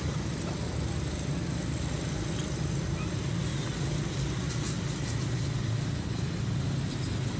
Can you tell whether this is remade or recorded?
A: recorded